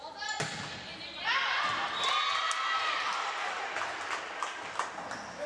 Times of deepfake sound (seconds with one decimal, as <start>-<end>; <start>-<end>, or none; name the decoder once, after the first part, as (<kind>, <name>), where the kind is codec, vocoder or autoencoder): none